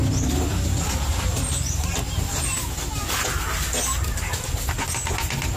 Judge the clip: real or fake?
real